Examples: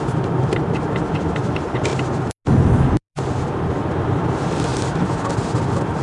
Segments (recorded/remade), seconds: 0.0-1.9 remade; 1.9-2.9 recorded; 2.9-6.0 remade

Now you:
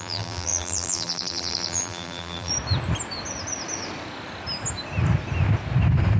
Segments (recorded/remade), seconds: 0.0-2.5 remade; 2.5-6.2 recorded